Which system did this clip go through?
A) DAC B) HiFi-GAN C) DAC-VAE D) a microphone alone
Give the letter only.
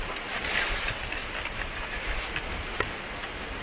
D